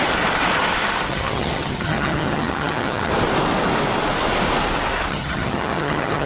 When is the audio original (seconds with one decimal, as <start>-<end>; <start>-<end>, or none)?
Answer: 0.0-1.1; 3.1-5.1